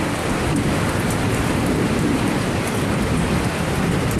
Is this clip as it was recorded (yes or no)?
yes